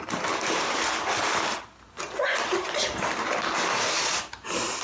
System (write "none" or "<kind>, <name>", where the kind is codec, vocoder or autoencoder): none